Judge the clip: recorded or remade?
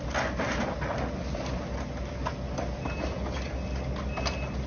recorded